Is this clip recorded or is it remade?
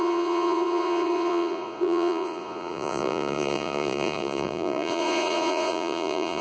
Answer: remade